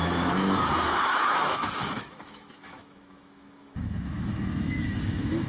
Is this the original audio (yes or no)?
no